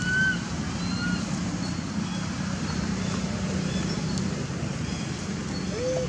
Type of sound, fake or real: real